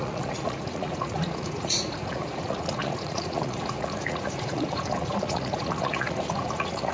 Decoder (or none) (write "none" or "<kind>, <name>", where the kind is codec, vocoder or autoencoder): vocoder, Vocos